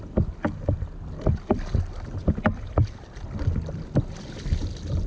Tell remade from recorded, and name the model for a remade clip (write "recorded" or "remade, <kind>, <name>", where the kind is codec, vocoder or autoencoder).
recorded